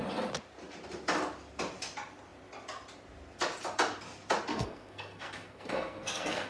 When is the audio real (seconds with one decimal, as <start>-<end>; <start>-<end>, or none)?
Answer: 0.0-4.5